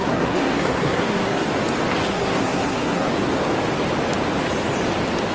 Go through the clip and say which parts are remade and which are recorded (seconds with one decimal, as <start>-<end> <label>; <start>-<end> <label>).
0.0-1.5 remade; 1.5-2.1 recorded; 2.1-3.1 remade; 3.1-5.3 recorded